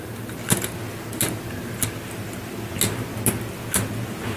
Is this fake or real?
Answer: real